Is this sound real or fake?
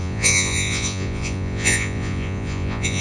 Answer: fake